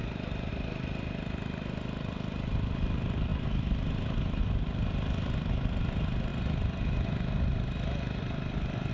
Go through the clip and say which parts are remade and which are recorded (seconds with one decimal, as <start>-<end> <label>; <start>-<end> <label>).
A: 0.0-8.9 recorded